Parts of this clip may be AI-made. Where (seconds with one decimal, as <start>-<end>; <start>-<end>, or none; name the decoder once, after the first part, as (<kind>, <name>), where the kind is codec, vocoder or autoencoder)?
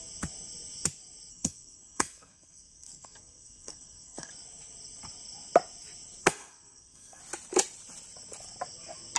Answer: 1.3-4.3 (codec, SNAC); 6.2-7.2